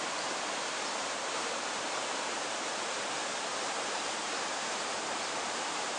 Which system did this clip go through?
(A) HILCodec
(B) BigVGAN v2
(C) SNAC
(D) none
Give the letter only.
B